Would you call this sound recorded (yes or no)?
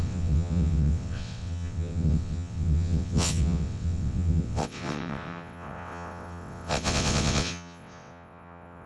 no